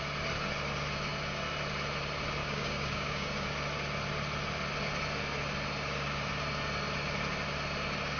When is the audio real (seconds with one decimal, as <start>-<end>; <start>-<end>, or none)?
0.0-2.4; 3.5-8.2